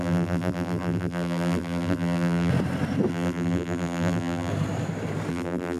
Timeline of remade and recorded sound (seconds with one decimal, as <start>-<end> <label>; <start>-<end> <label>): 0.0-2.5 remade; 2.5-3.1 recorded; 3.1-4.5 remade; 4.5-5.3 recorded; 5.3-5.8 remade